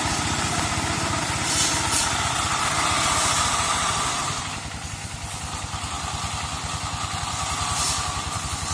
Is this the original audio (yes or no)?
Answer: yes